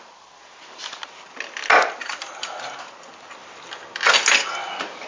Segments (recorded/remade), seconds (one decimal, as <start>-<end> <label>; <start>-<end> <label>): 0.0-1.8 recorded; 1.8-2.4 remade; 2.4-3.4 recorded; 3.4-4.1 remade; 4.1-5.1 recorded